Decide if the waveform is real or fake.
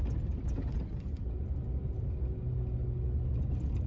real